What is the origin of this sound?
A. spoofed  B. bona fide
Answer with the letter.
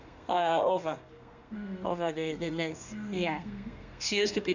A